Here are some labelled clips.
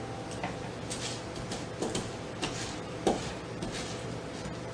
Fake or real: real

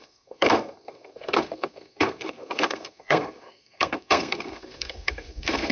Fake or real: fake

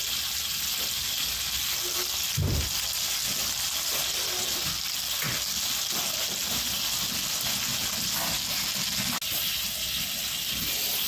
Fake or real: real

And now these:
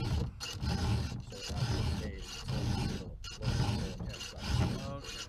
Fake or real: real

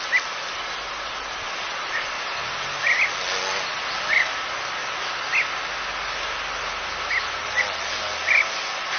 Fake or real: real